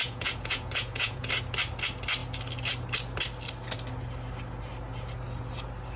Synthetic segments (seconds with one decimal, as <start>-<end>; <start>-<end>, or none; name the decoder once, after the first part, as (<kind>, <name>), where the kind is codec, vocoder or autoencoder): 0.0-1.3 (vocoder, Vocos)